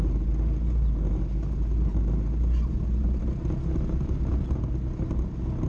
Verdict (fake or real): real